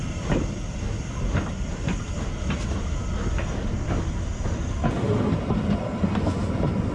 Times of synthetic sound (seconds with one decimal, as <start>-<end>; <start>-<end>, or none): none